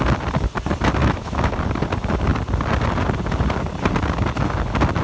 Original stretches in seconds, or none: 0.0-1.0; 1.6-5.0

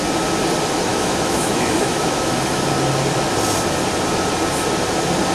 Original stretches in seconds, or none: 0.0-0.9; 2.7-5.3

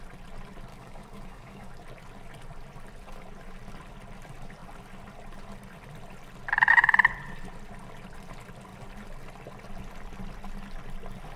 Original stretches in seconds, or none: 0.0-0.7; 1.7-11.4

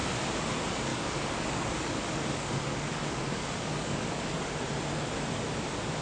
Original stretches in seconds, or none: 0.0-0.9; 4.5-6.0

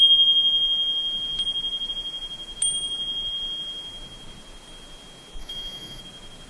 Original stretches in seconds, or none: 0.0-5.4; 6.0-6.5